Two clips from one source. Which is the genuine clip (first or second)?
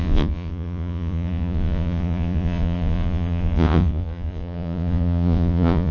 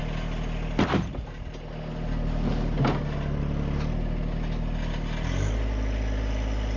second